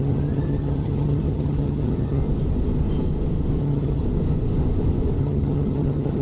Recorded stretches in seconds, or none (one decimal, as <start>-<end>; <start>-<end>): 2.2-3.6; 4.0-5.2